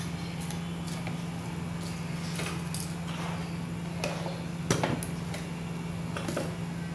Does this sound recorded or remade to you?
recorded